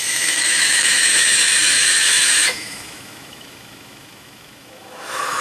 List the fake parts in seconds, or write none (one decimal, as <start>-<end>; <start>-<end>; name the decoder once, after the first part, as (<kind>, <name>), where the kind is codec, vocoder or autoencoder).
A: 0.0-5.4 (autoencoder, DAC-VAE)